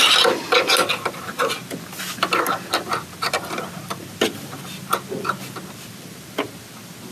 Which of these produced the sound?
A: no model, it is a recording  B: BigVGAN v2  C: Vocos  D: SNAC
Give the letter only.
A